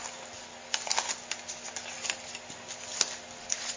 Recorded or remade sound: recorded